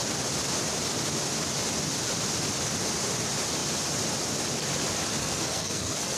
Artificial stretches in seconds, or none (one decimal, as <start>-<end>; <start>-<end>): 5.2-6.2